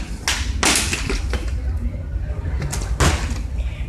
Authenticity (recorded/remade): recorded